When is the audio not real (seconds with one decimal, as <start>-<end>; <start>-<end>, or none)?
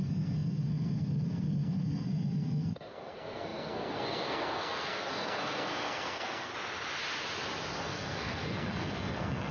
0.0-6.5; 7.8-9.5